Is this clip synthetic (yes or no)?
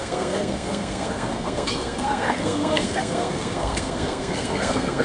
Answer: yes